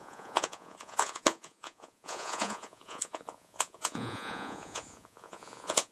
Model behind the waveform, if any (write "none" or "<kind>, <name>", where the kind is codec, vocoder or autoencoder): vocoder, Vocos